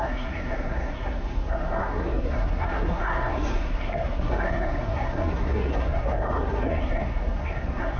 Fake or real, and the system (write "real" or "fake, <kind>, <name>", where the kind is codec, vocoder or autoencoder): fake, codec, SNAC